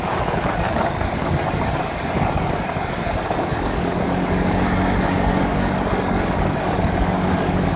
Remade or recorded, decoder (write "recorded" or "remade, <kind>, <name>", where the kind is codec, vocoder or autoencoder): remade, codec, DAC